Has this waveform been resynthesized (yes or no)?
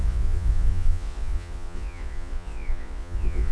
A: yes